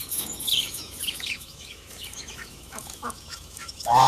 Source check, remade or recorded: remade